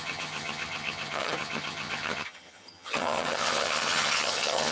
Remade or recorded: remade